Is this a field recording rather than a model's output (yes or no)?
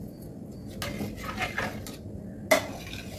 yes